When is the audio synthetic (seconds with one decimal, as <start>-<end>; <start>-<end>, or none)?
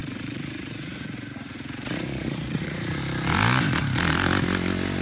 0.0-3.0